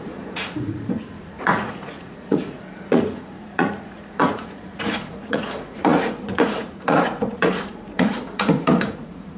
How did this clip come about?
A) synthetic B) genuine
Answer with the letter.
A